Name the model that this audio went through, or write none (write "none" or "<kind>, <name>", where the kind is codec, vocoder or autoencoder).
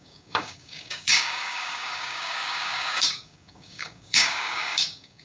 codec, DAC